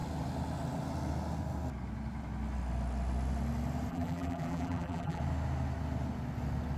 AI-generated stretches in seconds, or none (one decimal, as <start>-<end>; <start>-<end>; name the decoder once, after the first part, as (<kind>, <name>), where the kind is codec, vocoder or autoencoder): 3.9-5.2 (vocoder, BigVGAN v2)